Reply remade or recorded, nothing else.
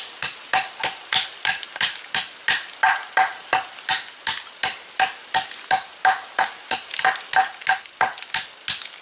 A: recorded